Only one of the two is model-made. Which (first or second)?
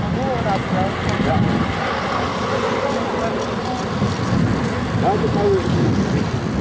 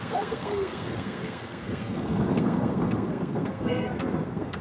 second